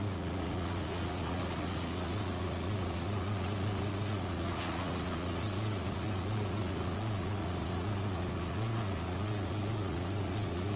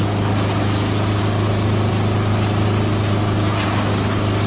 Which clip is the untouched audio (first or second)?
second